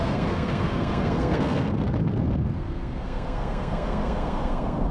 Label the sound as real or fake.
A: fake